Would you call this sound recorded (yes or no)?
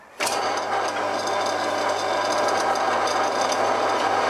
yes